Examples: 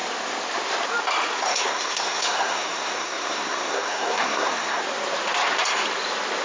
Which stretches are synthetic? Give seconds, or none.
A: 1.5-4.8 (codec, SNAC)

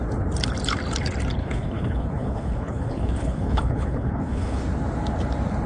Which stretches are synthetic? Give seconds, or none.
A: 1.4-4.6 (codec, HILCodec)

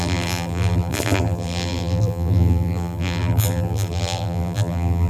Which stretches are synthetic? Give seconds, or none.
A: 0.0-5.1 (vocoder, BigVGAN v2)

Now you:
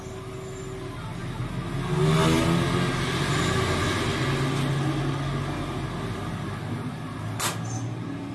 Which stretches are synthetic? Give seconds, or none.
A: none